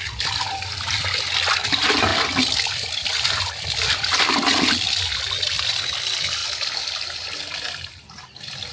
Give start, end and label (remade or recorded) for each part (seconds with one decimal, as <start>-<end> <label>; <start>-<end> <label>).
0.0-2.1 remade; 2.1-2.9 recorded; 2.9-6.4 remade; 6.4-7.7 recorded; 7.7-8.7 remade